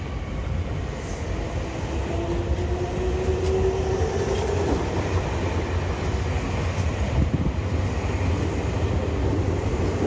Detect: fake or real real